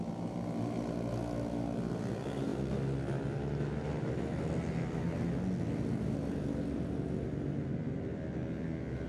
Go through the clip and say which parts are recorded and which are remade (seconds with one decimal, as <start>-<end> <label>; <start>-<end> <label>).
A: 0.0-9.1 recorded